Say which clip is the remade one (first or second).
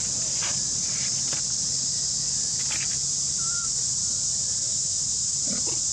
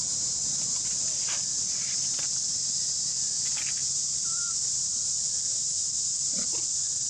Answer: second